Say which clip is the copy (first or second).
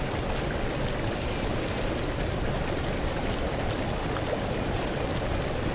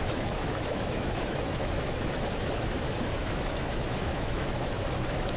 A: second